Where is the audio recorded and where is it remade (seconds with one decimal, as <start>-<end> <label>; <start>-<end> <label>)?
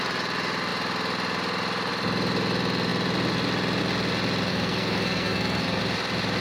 0.0-4.5 recorded; 4.5-5.8 remade; 5.8-6.4 recorded